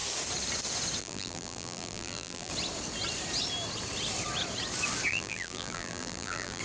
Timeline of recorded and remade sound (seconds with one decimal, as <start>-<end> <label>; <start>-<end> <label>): 0.0-1.0 recorded; 1.0-2.5 remade; 2.5-5.1 recorded; 5.1-6.6 remade